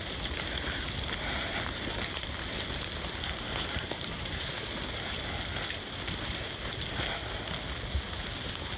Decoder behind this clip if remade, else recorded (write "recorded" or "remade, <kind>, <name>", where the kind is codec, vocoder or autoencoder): recorded